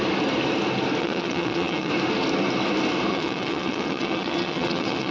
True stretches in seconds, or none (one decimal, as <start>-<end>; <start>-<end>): 0.0-1.0; 1.9-3.1